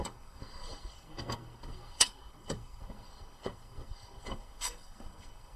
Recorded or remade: remade